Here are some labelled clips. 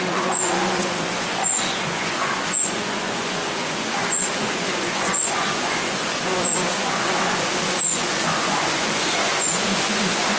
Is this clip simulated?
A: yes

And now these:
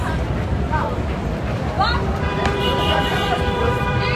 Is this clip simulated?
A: yes